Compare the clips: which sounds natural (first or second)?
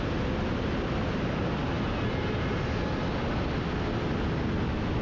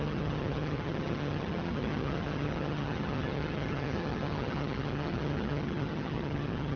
first